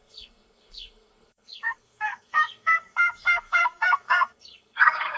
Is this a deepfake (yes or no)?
yes